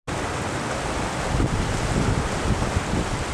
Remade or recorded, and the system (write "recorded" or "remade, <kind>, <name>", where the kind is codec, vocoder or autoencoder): recorded